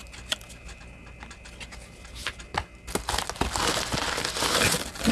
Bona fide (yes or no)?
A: yes